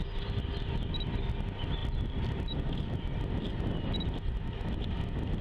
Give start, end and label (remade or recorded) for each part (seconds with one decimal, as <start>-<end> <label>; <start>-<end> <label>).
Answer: 0.0-1.8 recorded; 1.8-2.5 remade; 2.5-5.4 recorded